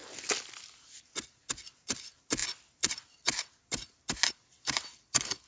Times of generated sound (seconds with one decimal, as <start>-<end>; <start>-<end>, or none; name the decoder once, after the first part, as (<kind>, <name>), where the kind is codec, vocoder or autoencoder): none